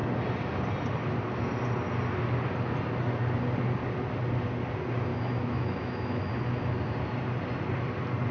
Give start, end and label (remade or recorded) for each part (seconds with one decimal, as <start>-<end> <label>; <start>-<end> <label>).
0.0-5.1 recorded; 5.1-6.3 remade; 6.3-8.3 recorded